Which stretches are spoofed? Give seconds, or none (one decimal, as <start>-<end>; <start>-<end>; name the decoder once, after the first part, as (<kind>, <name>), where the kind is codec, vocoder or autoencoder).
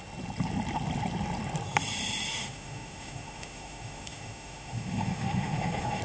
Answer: 2.3-6.0 (autoencoder, DAC-VAE)